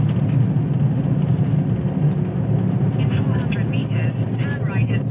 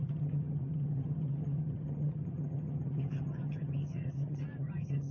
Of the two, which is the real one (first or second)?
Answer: first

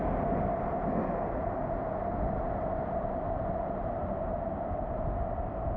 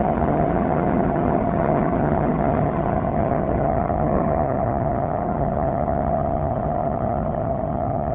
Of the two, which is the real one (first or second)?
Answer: first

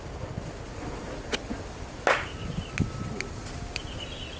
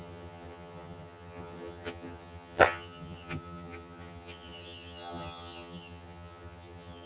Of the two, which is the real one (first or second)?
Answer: first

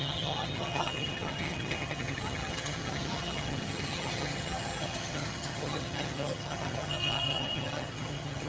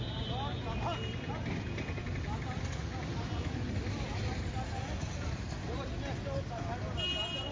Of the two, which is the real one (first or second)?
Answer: second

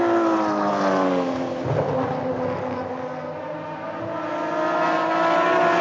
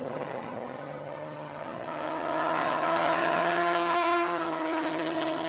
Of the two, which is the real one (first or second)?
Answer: first